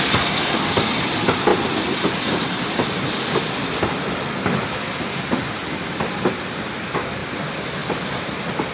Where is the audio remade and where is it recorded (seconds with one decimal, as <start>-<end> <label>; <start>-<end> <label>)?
0.0-8.7 recorded